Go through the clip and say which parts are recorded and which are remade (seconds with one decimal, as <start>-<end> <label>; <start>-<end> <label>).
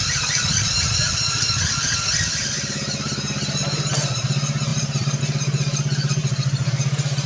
0.0-4.3 remade; 4.3-4.7 recorded; 4.7-5.2 remade; 5.2-6.2 recorded; 6.2-6.7 remade; 6.7-7.3 recorded